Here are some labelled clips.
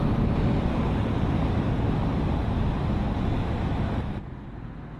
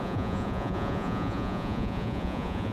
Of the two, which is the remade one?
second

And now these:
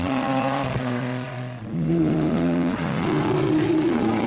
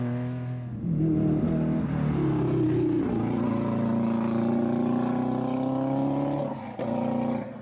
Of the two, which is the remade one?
first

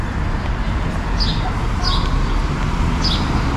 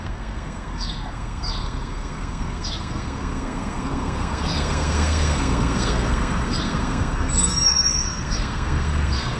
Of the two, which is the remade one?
second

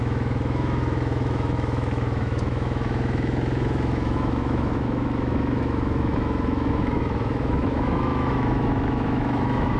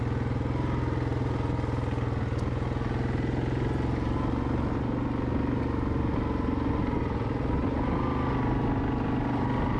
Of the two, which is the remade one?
first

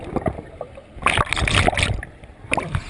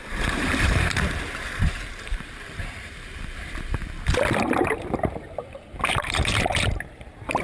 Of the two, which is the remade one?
second